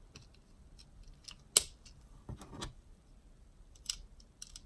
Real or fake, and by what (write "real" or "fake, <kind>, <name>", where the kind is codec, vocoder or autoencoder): real